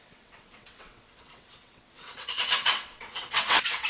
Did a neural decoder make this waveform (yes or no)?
yes